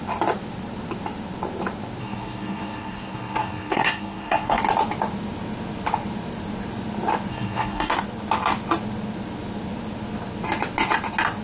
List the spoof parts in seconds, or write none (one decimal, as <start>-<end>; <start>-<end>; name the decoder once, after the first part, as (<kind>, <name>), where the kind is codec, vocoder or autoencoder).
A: 2.0-4.6 (codec, SNAC); 7.3-7.9